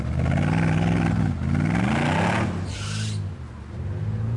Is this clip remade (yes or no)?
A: no